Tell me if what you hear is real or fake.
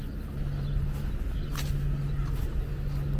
real